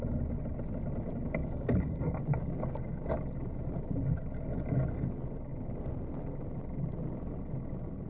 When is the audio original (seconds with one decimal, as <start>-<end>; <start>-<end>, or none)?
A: 0.0-1.4; 2.2-8.1

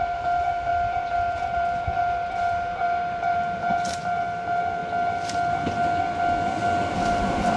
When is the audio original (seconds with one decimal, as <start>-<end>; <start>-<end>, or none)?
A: 4.8-6.9

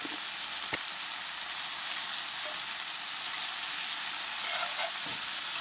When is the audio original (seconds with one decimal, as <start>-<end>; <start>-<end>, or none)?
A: 0.0-5.6

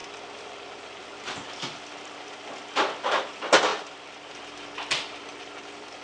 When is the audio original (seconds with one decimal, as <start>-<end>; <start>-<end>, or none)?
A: 0.0-1.2

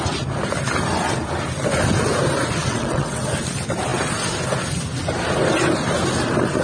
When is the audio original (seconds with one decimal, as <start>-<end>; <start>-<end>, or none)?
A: 0.0-2.6; 3.2-6.6

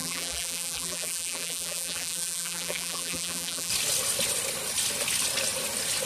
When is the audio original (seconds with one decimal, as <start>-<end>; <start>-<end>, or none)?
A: 3.7-6.1

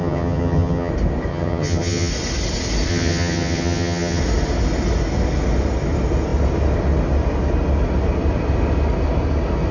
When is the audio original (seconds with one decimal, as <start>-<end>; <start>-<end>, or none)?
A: 0.9-1.3; 2.1-2.9; 4.2-9.7

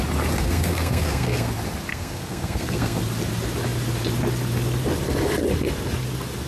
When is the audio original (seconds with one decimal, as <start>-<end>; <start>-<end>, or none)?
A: 0.0-0.4; 1.5-1.9; 3.0-6.5